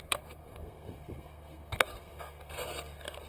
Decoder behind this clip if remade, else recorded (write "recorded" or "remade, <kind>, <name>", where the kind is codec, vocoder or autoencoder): remade, codec, SNAC